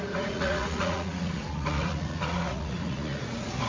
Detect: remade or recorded remade